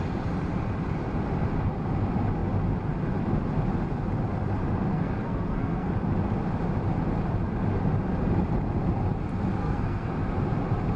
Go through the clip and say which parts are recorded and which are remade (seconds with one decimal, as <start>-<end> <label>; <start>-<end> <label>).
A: 0.0-4.9 recorded; 4.9-5.9 remade; 5.9-9.6 recorded; 9.6-10.1 remade; 10.1-11.0 recorded